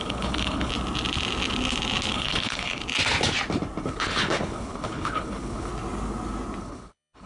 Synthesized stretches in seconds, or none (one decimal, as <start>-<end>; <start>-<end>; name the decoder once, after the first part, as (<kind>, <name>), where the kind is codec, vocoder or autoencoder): 0.0-0.7 (codec, HILCodec); 2.1-2.8; 3.8-5.7; 6.6-7.3